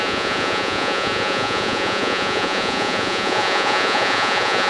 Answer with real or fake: fake